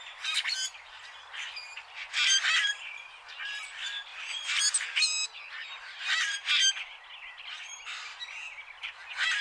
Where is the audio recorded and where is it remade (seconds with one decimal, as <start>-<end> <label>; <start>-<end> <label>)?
0.0-4.1 remade; 4.1-5.0 recorded; 5.0-9.4 remade